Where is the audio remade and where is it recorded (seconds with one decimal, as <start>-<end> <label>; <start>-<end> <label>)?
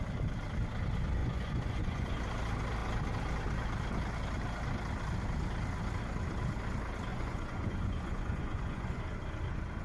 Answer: 0.0-1.2 recorded; 1.2-2.2 remade; 2.2-7.1 recorded; 7.1-9.0 remade; 9.0-9.8 recorded